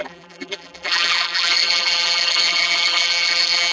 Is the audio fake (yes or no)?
yes